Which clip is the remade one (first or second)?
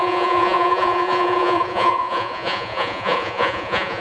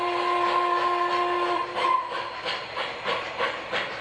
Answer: first